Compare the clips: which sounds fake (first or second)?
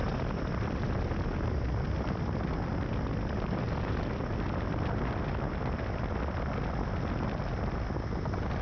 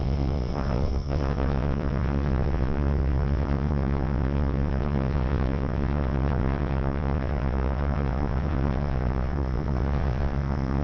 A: second